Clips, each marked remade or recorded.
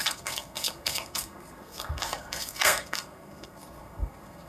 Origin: remade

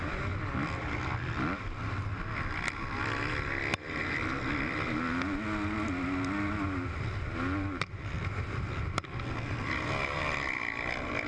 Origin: recorded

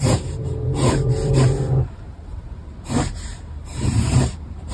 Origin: remade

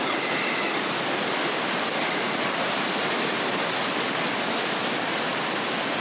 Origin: recorded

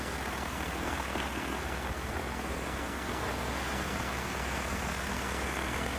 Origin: remade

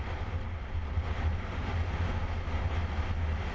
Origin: recorded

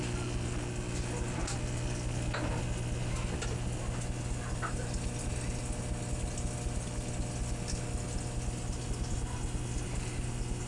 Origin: recorded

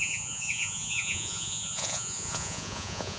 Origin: remade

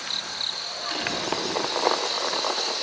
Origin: recorded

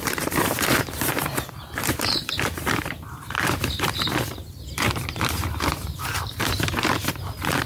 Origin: remade